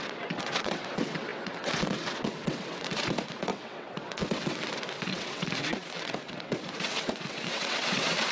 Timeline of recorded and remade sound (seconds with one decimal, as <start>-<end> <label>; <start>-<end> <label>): 0.0-8.3 remade